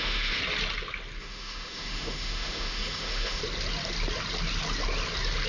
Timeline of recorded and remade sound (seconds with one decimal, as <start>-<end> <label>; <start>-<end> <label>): 0.0-0.4 remade; 0.4-1.2 recorded; 1.2-3.4 remade; 3.4-5.5 recorded